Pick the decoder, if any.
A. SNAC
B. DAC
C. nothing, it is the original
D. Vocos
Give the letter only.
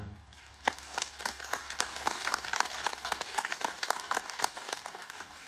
B